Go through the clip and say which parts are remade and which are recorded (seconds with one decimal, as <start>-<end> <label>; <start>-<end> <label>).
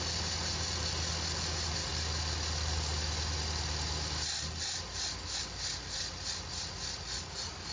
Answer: 0.0-7.7 recorded